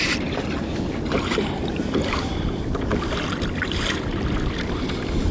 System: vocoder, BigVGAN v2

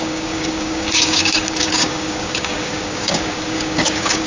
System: codec, DAC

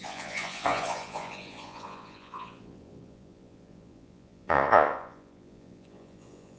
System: vocoder, Vocos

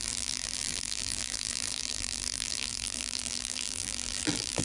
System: vocoder, BigVGAN v2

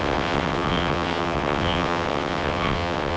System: vocoder, WaveNeXt